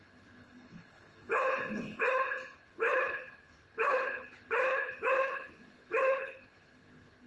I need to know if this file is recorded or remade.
remade